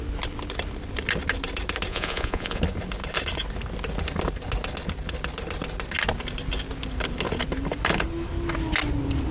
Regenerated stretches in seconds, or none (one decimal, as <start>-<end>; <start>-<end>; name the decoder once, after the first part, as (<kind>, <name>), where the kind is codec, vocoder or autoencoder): 1.9-2.6 (vocoder, Vocos)